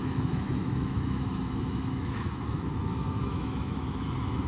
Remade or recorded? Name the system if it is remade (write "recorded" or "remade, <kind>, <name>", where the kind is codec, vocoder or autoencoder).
remade, autoencoder, DAC-VAE